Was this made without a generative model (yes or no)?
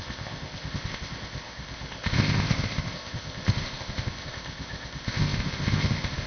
no